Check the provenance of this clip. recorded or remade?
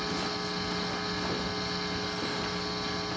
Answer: recorded